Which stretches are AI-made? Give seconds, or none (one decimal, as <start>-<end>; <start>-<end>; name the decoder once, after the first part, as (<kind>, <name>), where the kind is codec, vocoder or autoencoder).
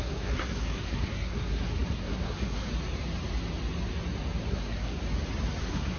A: 0.0-2.7 (codec, SNAC); 4.5-5.0; 5.6-6.0